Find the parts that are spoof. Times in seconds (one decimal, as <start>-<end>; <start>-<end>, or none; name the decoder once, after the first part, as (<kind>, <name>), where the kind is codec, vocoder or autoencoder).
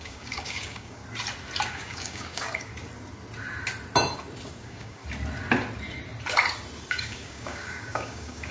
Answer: 0.0-1.0 (codec, DAC); 1.7-2.7; 4.6-5.0; 6.9-8.5